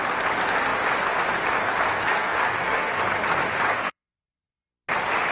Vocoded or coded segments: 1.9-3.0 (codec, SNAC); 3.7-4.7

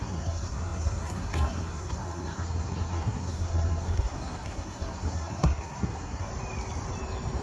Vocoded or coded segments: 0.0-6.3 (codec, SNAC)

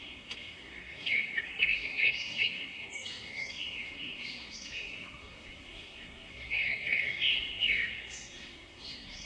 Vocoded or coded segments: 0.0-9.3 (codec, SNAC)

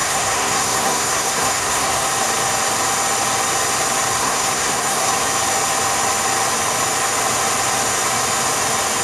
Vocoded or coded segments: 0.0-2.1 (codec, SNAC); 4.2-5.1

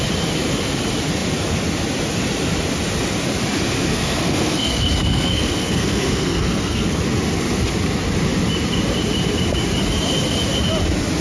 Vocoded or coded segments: 3.9-7.0 (codec, SNAC)

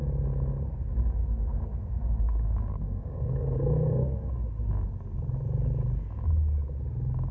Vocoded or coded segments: 1.2-4.3 (codec, SNAC)